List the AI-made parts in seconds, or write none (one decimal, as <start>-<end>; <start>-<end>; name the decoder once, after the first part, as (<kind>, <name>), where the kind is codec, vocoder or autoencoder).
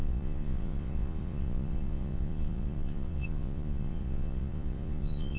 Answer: 0.0-5.4 (vocoder, Vocos)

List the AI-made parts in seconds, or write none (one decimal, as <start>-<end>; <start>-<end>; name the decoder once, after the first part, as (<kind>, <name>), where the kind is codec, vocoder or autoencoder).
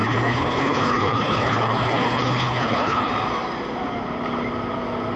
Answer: 0.0-3.1 (codec, HILCodec)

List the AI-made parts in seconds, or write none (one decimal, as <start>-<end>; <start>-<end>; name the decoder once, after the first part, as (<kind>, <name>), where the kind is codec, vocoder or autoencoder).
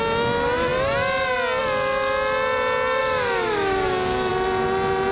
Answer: 3.0-4.3 (codec, DAC)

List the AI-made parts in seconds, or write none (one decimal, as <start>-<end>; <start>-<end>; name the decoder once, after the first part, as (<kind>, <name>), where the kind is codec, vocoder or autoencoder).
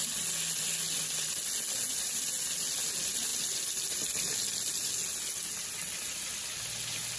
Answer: none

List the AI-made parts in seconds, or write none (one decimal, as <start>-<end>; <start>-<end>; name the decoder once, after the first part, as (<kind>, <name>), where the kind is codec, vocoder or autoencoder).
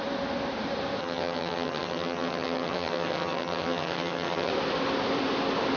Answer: 1.0-4.5 (vocoder, HiFi-GAN)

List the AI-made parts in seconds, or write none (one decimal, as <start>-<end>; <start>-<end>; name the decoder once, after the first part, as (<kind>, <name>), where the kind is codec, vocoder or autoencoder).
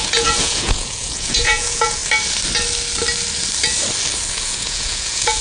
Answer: 0.0-2.0 (vocoder, Vocos); 4.3-5.4